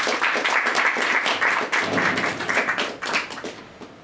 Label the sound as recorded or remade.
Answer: recorded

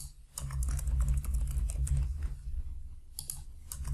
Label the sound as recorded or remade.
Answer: recorded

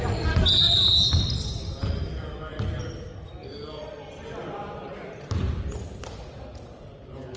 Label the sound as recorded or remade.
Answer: recorded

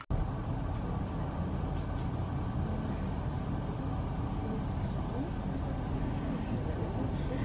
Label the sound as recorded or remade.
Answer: recorded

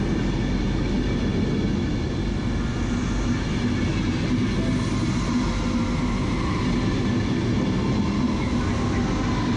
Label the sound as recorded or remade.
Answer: recorded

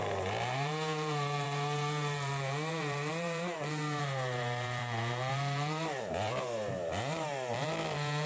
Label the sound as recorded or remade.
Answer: remade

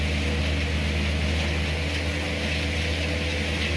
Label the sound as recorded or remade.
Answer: recorded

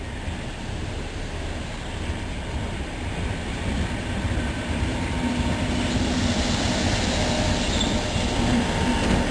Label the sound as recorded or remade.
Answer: recorded